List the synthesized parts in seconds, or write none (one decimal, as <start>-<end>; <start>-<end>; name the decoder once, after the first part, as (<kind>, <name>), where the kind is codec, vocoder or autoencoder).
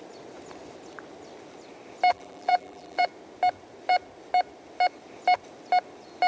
2.1-3.1 (vocoder, BigVGAN v2)